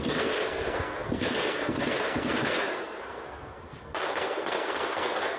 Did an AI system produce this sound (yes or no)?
yes